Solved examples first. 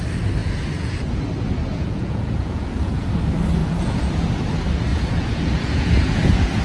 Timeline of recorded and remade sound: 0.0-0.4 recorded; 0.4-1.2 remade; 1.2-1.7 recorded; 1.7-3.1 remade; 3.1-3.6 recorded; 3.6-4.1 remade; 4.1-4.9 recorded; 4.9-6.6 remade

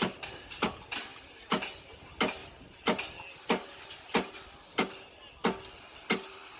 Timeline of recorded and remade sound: 0.0-6.6 recorded

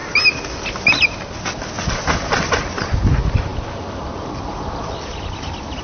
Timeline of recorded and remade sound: 0.0-5.8 recorded

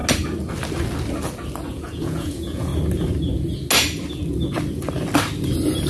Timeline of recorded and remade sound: 0.0-1.7 recorded; 1.7-2.7 remade; 2.7-5.9 recorded